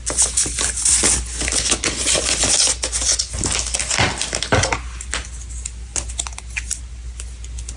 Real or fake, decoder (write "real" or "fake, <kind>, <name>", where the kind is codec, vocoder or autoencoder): real